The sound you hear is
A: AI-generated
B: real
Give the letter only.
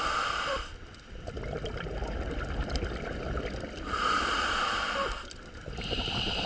A